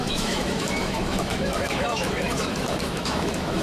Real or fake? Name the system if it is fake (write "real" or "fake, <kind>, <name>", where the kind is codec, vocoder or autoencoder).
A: fake, autoencoder, DAC-VAE